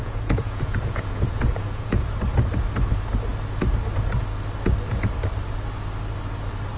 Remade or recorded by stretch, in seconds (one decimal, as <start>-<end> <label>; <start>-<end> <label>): 0.0-2.0 remade; 2.0-6.8 recorded